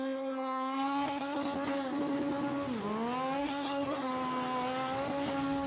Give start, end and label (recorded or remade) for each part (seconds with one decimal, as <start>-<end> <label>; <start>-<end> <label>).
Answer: 0.0-1.4 remade; 1.4-3.4 recorded; 3.4-4.1 remade; 4.1-5.7 recorded